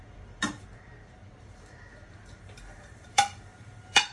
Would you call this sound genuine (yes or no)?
no